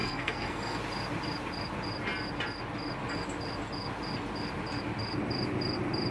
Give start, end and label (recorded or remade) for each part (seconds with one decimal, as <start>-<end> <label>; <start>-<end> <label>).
0.0-0.8 remade; 0.8-6.1 recorded